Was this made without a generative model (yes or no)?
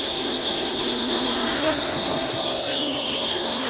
no